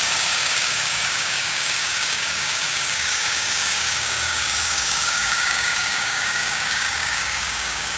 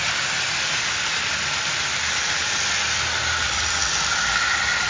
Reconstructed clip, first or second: first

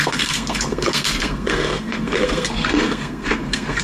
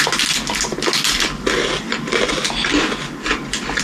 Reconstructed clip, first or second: first